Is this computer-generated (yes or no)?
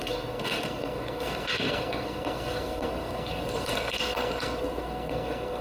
yes